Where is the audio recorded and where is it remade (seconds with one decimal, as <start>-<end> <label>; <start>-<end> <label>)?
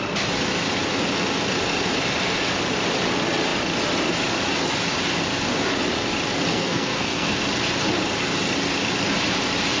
0.0-6.5 recorded; 6.5-7.4 remade; 7.4-9.8 recorded